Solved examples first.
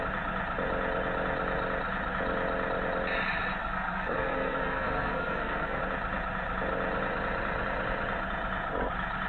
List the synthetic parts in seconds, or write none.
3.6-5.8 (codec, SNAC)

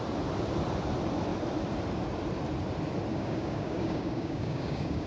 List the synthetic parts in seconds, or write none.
3.1-5.1 (codec, DAC)

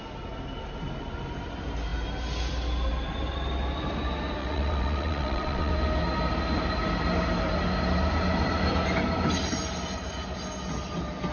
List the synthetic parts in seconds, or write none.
4.4-5.7 (vocoder, WaveNeXt)

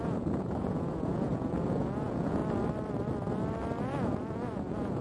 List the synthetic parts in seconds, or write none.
0.0-2.4 (vocoder, Vocos); 3.8-5.0

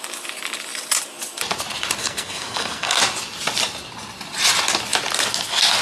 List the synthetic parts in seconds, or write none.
2.0-3.0 (codec, SNAC)

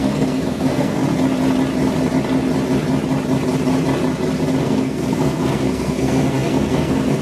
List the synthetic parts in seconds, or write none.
0.0-1.0 (codec, SNAC); 4.6-7.2

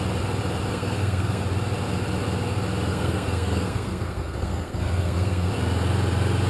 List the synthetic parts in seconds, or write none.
0.7-1.4 (codec, SNAC); 2.9-5.5

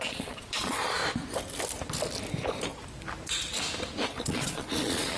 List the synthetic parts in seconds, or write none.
0.0-1.0 (vocoder, Vocos); 4.1-5.2